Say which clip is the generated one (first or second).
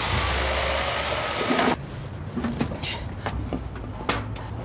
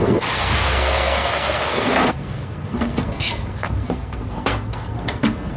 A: second